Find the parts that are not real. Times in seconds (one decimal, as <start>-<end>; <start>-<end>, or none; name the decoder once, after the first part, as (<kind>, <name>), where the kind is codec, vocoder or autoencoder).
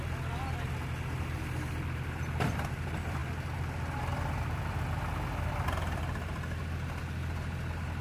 none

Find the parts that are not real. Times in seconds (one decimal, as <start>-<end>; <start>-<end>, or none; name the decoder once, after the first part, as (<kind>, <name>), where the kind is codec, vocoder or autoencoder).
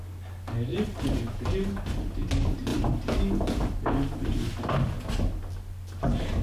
none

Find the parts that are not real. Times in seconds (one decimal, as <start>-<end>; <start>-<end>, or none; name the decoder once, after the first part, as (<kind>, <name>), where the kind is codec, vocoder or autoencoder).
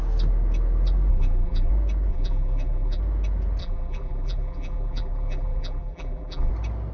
1.1-1.7 (vocoder, BigVGAN v2); 2.1-3.0; 3.6-6.5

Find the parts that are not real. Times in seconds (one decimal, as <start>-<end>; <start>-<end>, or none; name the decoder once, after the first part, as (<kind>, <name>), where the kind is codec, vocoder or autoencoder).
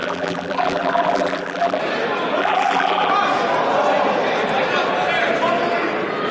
0.0-1.8 (vocoder, BigVGAN v2); 2.4-3.1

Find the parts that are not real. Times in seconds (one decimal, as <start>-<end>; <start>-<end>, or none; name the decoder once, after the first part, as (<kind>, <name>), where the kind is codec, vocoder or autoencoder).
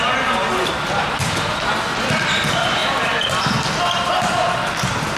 2.8-3.4 (vocoder, BigVGAN v2)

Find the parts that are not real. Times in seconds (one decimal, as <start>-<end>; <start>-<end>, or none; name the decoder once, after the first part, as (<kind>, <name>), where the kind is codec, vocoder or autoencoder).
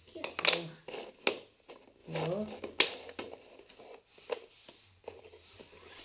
none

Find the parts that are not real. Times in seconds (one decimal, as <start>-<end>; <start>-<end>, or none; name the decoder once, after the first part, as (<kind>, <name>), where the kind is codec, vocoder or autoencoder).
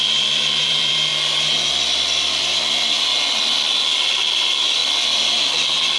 0.0-1.1 (vocoder, BigVGAN v2); 2.4-3.1; 4.3-4.8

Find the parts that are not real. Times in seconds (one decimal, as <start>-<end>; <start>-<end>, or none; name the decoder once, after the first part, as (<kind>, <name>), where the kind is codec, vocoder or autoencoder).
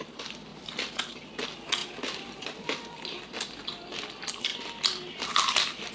0.5-1.1 (vocoder, BigVGAN v2); 1.8-4.0; 4.5-5.9